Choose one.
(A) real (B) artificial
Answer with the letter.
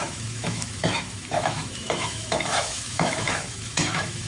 B